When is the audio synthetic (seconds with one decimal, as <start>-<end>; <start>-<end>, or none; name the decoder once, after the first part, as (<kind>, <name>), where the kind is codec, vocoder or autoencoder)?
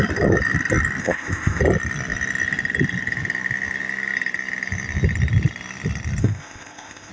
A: 1.0-1.6 (codec, ZipCodec); 6.2-7.1